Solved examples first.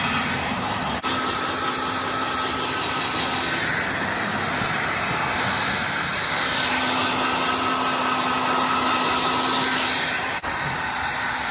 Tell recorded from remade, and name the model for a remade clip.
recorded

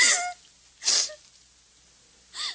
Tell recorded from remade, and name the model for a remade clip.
recorded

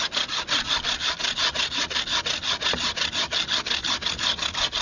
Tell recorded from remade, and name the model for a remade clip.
recorded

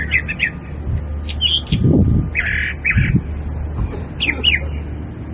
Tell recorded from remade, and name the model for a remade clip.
recorded